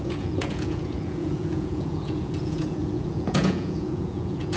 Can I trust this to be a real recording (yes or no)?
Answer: no